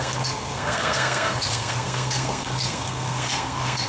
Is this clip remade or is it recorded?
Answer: remade